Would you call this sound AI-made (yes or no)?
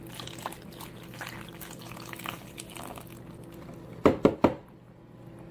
no